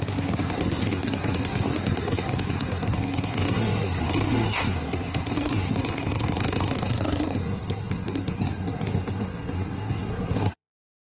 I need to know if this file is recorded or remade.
remade